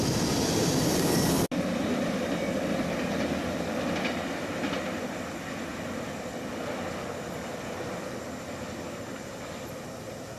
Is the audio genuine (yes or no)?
yes